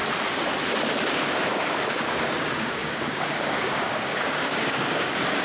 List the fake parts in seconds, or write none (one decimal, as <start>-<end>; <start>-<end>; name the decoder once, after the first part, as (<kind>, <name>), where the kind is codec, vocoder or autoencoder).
1.9-5.4 (codec, DAC)